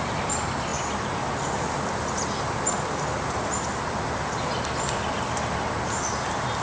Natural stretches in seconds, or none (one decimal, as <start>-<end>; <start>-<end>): 0.0-6.6